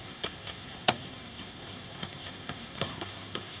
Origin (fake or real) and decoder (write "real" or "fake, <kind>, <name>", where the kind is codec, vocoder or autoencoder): fake, codec, SNAC